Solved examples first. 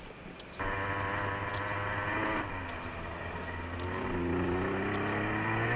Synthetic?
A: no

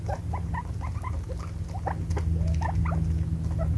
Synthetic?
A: no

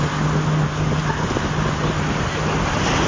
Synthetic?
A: no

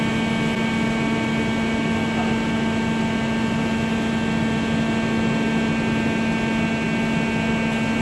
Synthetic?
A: no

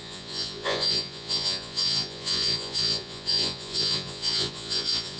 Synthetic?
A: yes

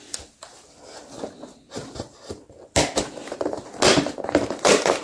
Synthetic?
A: no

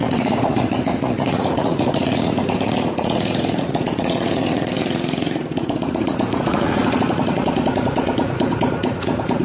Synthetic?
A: yes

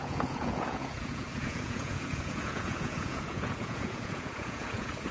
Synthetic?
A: yes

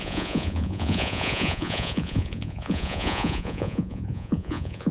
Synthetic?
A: yes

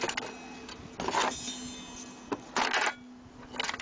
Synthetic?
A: no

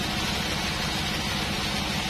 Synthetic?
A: no